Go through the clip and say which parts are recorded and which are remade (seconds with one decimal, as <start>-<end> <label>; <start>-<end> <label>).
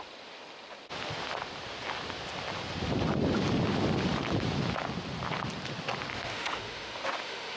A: 0.0-6.1 recorded; 6.1-7.6 remade